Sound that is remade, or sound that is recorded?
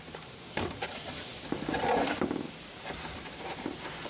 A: remade